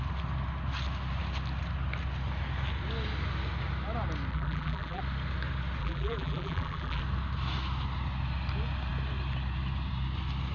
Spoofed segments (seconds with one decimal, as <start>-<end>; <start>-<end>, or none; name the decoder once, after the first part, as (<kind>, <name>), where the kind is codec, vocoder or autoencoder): 4.3-5.0 (vocoder, BigVGAN v2); 5.8-7.0